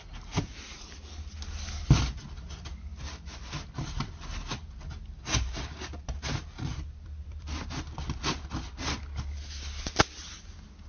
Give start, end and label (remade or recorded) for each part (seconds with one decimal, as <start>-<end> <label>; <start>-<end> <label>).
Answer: 0.0-6.4 recorded; 6.4-7.7 remade; 7.7-10.9 recorded